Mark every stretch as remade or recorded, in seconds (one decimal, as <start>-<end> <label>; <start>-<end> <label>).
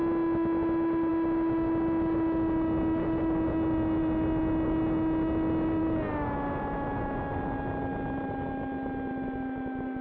0.0-10.0 recorded